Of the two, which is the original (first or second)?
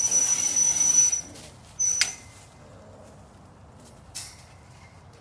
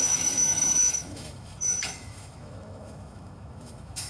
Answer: first